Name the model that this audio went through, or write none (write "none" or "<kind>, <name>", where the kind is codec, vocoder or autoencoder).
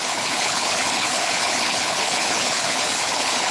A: codec, HILCodec